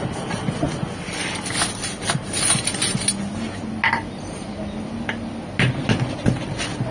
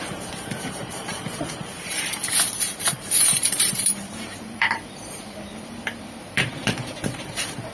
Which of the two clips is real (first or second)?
first